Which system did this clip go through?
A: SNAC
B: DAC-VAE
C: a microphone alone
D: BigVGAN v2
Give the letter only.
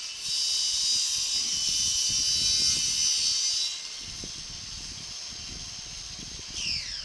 C